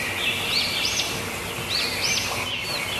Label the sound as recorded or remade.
recorded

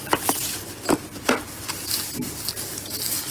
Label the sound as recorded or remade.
recorded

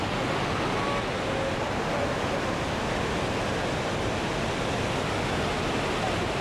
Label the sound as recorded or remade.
recorded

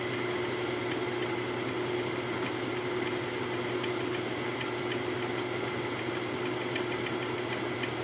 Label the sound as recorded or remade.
recorded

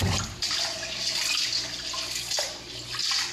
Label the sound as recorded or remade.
recorded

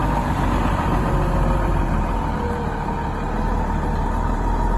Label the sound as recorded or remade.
remade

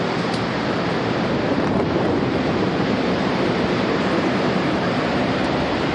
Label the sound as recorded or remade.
remade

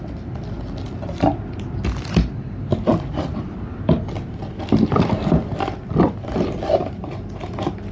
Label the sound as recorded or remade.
recorded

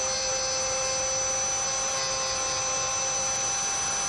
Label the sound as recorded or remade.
recorded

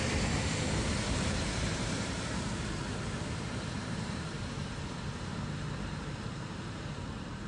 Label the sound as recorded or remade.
remade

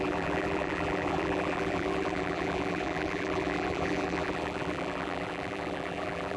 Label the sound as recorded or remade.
remade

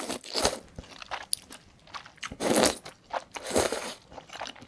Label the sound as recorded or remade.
recorded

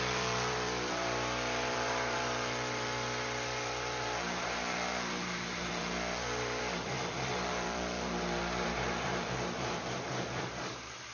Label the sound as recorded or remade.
remade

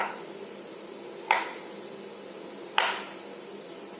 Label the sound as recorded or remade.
recorded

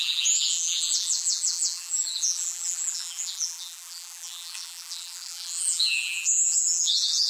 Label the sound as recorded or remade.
remade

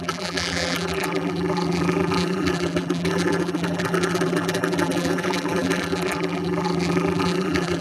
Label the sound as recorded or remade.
remade